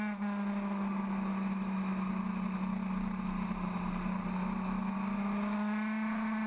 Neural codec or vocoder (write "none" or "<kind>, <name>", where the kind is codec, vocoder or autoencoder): none